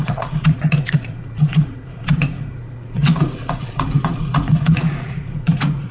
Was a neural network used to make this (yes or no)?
yes